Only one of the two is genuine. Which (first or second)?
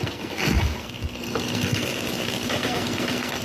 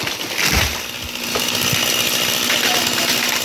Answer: second